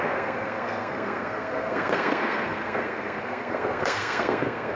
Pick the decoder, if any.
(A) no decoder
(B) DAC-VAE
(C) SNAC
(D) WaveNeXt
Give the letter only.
C